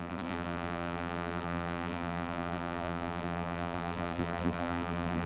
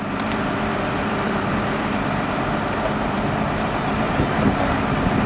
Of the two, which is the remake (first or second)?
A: first